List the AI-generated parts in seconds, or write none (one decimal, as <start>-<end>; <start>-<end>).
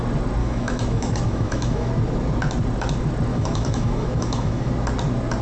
0.4-1.9; 3.3-4.7